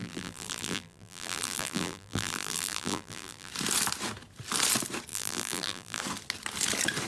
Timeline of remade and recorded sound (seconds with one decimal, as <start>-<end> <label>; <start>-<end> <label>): 0.0-3.5 remade; 3.5-5.1 recorded; 5.1-6.0 remade; 6.0-7.1 recorded